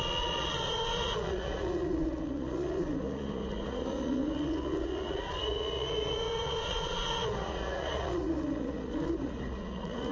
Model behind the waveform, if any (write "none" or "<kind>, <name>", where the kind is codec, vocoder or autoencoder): vocoder, Vocos